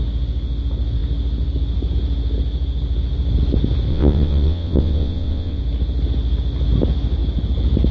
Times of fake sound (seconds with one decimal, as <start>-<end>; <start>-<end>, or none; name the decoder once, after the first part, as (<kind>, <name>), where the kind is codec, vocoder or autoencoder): 3.9-5.6 (vocoder, WaveNeXt)